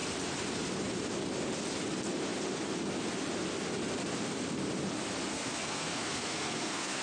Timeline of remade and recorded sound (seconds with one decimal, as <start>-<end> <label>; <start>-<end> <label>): 0.0-5.3 recorded; 5.3-7.0 remade